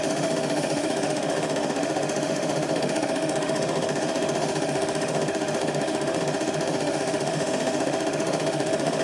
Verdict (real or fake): fake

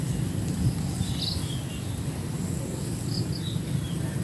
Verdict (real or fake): real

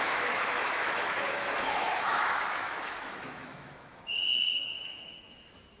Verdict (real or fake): fake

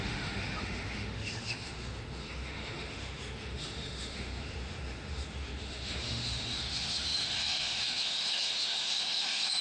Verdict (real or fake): fake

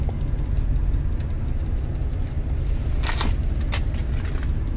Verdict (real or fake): real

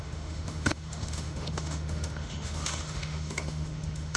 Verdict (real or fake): fake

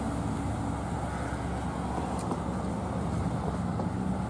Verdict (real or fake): real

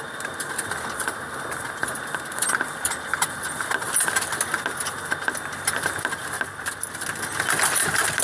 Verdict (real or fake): real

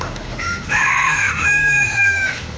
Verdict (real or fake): fake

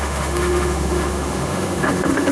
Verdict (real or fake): fake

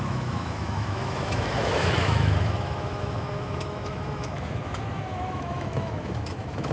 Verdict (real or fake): fake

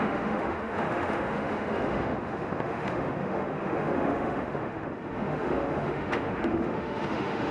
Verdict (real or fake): fake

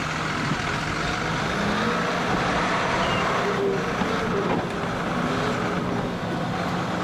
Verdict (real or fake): real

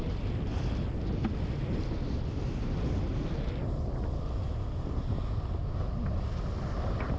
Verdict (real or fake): real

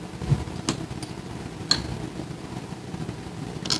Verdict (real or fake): real